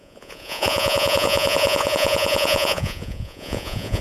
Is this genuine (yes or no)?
no